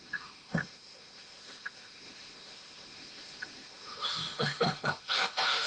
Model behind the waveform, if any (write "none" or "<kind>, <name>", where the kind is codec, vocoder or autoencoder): autoencoder, DAC-VAE